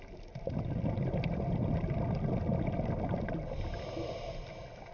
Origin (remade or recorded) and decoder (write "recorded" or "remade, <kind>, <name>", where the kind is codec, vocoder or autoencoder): recorded